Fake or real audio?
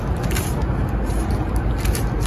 real